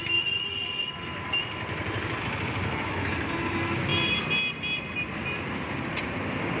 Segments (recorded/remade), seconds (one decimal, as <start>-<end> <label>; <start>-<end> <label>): 0.0-2.6 recorded; 2.6-3.1 remade; 3.1-6.6 recorded